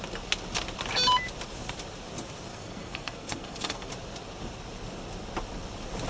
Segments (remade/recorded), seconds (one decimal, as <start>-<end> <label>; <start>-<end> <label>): 0.0-2.5 recorded; 2.5-3.9 remade; 3.9-6.1 recorded